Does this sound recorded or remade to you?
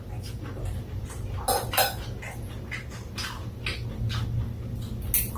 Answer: recorded